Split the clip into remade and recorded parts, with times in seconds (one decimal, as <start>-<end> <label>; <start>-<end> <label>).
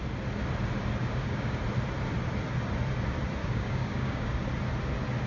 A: 0.0-1.0 recorded; 1.0-1.6 remade; 1.6-3.4 recorded; 3.4-4.3 remade; 4.3-5.3 recorded